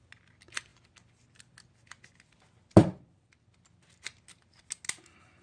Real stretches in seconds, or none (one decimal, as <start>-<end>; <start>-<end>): 0.0-5.4